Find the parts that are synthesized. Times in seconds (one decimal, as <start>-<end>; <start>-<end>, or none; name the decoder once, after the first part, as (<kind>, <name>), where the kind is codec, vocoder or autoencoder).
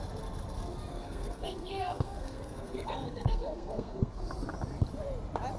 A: 0.9-4.2 (codec, SNAC)